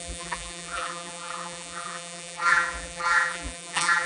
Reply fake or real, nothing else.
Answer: fake